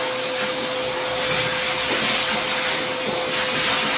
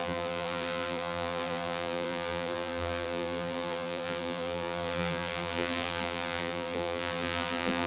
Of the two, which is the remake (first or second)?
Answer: second